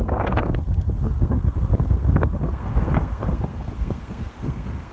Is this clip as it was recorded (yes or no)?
no